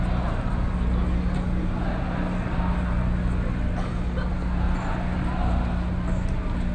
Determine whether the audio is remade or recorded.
recorded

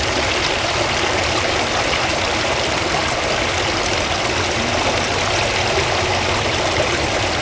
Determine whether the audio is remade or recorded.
recorded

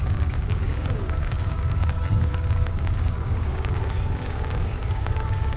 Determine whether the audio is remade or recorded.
remade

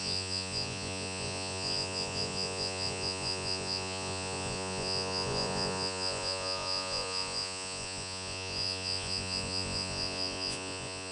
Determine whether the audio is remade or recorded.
remade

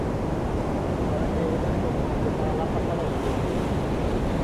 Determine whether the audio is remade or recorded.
recorded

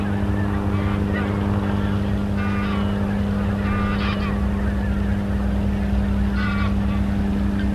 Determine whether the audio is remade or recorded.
recorded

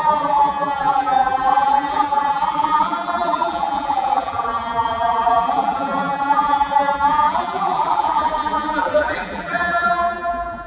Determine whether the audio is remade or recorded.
remade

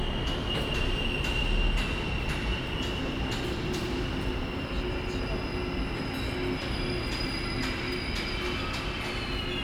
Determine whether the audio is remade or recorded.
recorded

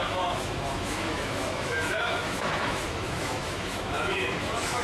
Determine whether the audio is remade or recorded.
remade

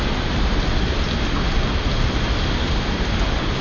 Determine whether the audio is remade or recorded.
recorded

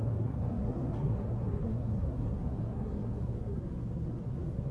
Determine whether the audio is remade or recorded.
remade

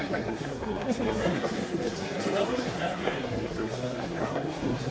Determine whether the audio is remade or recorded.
remade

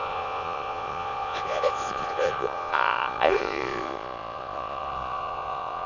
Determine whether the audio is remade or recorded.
remade